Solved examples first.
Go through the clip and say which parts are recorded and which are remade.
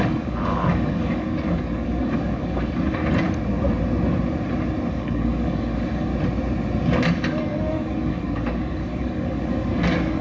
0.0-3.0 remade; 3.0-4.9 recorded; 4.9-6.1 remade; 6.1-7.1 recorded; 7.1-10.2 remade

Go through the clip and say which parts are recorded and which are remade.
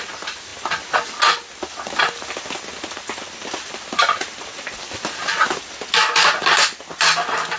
0.0-7.6 recorded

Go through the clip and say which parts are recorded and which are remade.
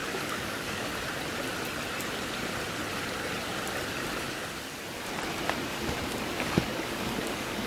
0.0-0.9 remade; 0.9-5.7 recorded; 5.7-7.7 remade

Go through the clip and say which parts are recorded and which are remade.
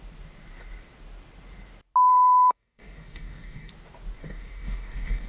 0.0-2.1 recorded; 2.1-3.7 remade; 3.7-4.2 recorded; 4.2-5.3 remade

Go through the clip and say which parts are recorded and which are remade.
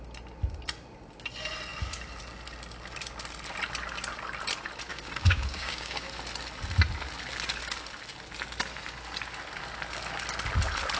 0.0-4.9 recorded; 4.9-6.1 remade; 6.1-11.0 recorded